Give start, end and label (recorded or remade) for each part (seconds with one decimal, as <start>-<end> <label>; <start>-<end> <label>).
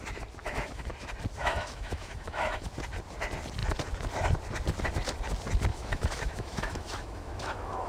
0.0-0.4 recorded; 0.4-0.9 remade; 0.9-1.4 recorded; 1.4-2.7 remade; 2.7-5.7 recorded; 5.7-7.9 remade